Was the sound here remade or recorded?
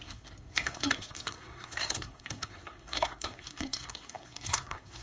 remade